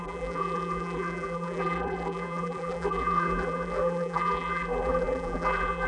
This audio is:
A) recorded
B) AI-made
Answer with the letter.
B